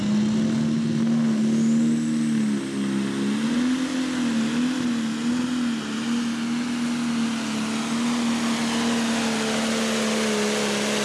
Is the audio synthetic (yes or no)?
no